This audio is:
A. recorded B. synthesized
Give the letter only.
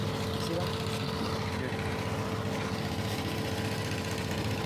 A